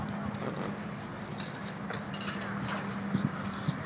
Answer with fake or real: real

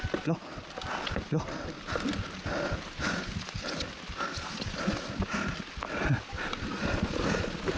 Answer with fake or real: real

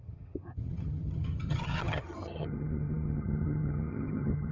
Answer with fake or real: fake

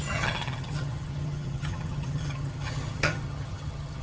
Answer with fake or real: fake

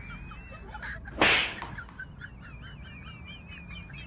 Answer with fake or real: real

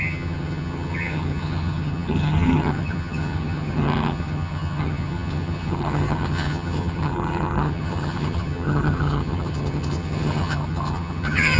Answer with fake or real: fake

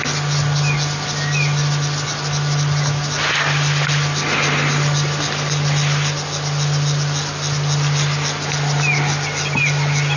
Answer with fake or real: real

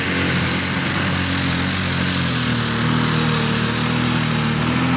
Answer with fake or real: real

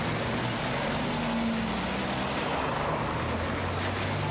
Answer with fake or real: real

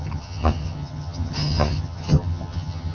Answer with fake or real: fake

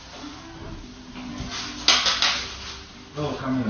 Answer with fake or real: real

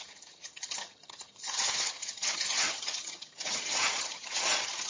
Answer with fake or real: fake